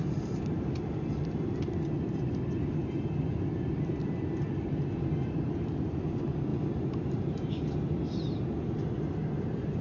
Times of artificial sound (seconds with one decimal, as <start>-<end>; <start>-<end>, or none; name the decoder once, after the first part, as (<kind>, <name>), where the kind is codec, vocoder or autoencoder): none